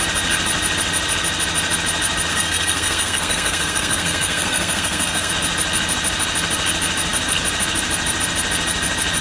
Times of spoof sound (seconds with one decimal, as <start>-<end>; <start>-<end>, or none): 2.3-5.3